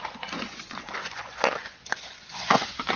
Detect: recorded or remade remade